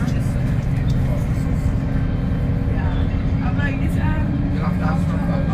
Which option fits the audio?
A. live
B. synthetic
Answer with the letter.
A